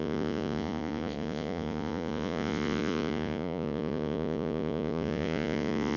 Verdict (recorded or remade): remade